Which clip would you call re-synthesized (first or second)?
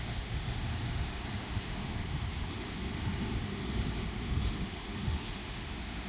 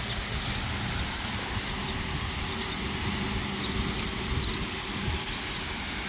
first